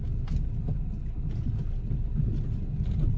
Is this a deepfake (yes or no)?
no